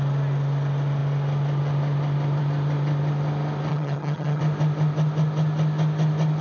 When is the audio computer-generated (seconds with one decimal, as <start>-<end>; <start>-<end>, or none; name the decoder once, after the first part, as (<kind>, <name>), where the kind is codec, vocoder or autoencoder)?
3.7-4.4 (vocoder, HiFi-GAN)